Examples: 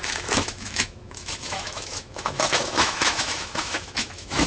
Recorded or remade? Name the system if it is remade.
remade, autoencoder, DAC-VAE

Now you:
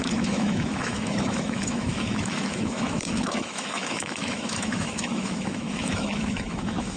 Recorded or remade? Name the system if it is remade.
remade, autoencoder, DAC-VAE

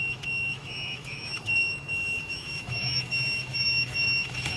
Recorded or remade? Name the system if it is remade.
remade, autoencoder, DAC-VAE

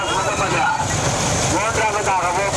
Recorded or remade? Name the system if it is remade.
recorded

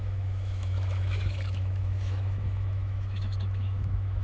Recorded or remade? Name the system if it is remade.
remade, autoencoder, DAC-VAE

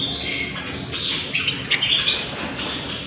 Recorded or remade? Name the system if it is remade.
recorded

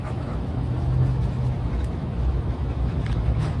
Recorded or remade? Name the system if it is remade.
remade, autoencoder, DAC-VAE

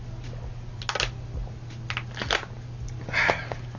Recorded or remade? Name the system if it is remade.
recorded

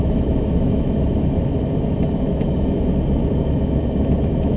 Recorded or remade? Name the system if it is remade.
remade, autoencoder, DAC-VAE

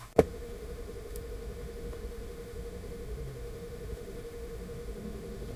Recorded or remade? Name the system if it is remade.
remade, autoencoder, DAC-VAE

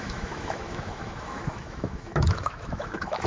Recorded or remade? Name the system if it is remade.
remade, autoencoder, DAC-VAE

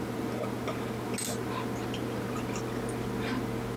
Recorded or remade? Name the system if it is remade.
recorded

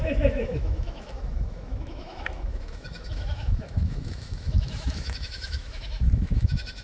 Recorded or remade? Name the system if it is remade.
remade, autoencoder, DAC-VAE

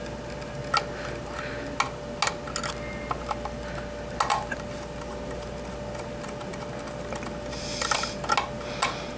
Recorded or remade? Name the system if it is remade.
recorded